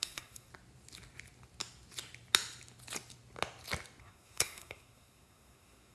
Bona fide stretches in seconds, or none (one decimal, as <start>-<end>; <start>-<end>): 0.5-4.0